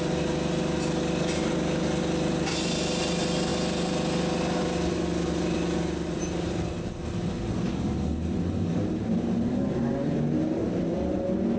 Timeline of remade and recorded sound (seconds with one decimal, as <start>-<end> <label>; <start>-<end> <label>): 0.0-11.6 recorded